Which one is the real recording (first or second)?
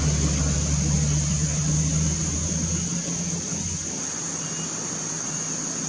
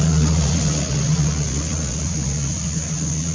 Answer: first